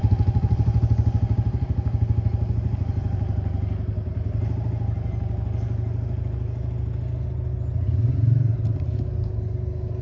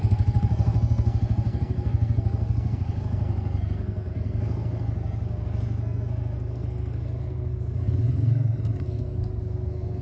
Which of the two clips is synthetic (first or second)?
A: second